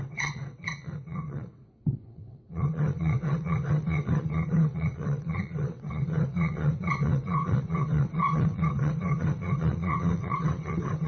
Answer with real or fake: fake